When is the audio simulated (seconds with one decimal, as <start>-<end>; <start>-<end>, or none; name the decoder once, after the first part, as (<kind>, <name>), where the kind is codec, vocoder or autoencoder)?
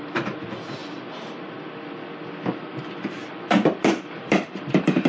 3.2-5.1 (vocoder, BigVGAN v2)